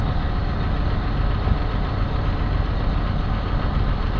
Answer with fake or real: real